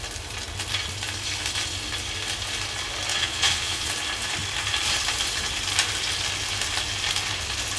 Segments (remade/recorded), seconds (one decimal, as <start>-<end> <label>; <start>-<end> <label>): 0.0-3.1 recorded; 3.1-3.9 remade; 3.9-7.8 recorded